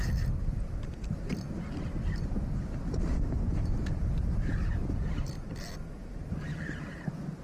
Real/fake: real